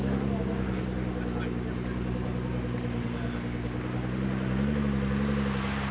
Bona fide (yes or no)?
yes